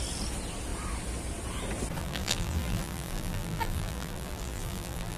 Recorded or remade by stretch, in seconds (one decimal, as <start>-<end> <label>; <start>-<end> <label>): 0.0-2.0 recorded; 2.0-5.2 remade